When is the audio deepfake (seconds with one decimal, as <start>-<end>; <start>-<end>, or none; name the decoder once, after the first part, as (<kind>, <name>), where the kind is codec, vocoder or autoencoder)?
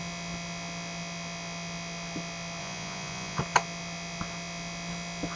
2.6-3.4 (vocoder, Vocos)